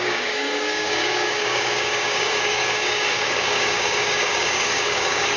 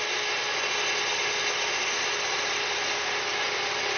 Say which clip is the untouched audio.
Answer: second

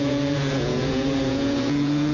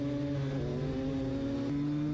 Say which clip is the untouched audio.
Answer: second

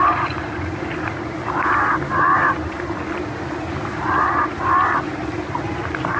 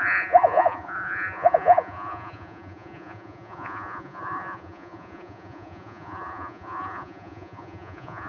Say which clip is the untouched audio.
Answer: first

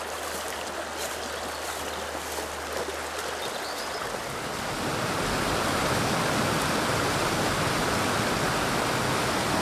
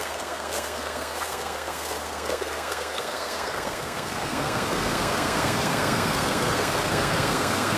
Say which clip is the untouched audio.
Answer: first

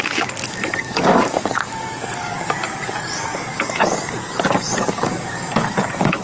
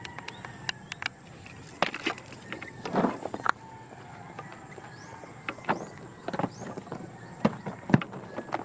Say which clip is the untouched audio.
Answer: second